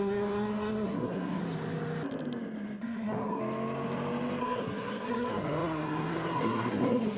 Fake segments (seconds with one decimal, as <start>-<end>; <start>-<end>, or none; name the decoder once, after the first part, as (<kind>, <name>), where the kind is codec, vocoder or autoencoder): 0.0-1.4 (codec, SNAC); 2.8-3.4; 4.4-7.2